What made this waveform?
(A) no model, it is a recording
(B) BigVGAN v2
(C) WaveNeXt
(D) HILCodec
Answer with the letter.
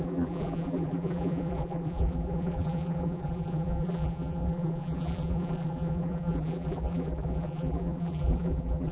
B